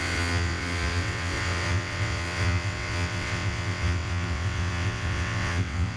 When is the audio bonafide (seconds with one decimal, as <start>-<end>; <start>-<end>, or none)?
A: none